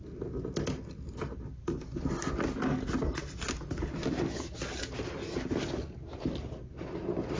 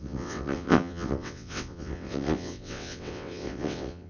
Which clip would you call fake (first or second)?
second